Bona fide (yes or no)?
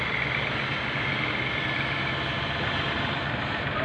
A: no